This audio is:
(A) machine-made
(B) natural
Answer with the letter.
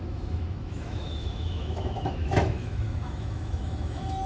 A